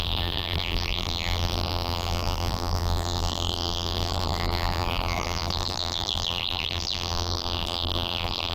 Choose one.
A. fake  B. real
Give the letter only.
A